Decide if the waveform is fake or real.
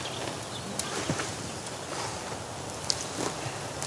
real